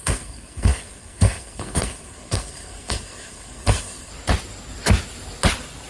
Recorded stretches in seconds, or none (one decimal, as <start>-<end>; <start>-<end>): 4.1-5.9